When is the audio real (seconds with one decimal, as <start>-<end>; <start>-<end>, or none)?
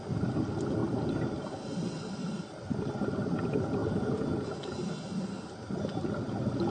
0.0-6.7